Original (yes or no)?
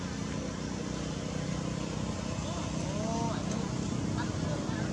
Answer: yes